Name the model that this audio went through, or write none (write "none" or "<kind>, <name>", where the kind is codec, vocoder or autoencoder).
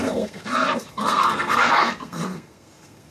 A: codec, SNAC